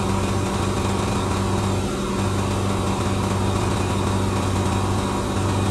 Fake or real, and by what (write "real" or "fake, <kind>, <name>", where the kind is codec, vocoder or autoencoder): real